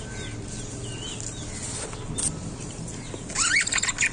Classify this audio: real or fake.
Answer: real